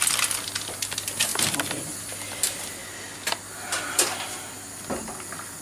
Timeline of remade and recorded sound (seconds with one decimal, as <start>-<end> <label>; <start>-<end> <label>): 0.0-5.6 recorded